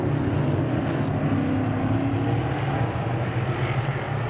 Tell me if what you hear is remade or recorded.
recorded